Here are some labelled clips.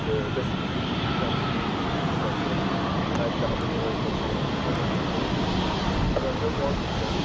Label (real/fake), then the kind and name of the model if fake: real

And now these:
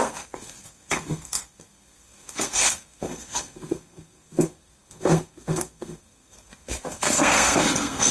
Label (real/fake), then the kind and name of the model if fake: fake, codec, SNAC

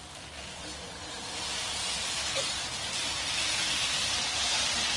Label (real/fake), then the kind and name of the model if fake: real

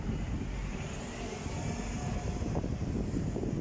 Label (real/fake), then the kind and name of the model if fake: real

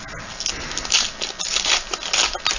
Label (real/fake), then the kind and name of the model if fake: real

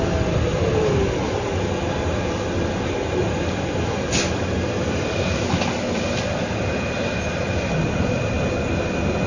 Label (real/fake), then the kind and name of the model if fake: real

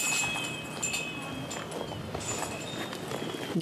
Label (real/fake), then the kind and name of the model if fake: real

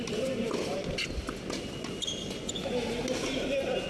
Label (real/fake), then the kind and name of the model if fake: real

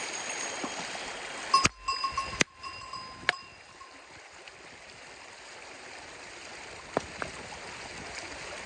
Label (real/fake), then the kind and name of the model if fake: real